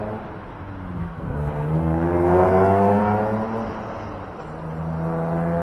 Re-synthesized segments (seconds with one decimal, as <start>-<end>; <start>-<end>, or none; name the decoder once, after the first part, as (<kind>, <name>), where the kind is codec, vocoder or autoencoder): 1.0-3.0 (codec, SNAC)